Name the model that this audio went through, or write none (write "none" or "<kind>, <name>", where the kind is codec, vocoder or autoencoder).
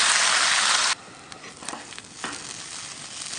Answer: none